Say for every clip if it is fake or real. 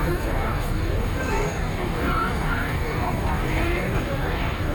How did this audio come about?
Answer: fake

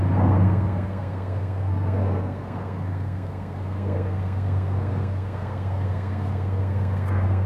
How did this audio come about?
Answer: fake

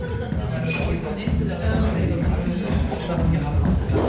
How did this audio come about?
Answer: real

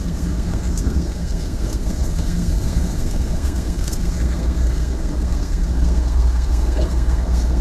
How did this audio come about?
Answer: fake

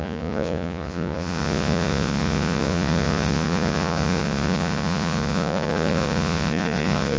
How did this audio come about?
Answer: fake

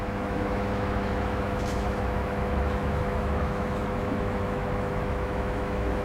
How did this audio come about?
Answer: fake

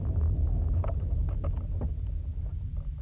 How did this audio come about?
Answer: real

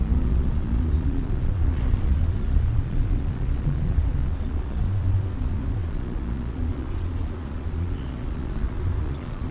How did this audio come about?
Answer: fake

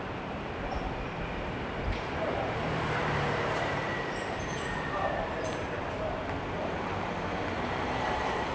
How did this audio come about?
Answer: fake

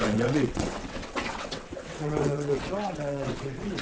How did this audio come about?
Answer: fake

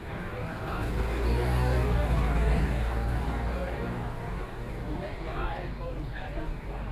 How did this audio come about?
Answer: fake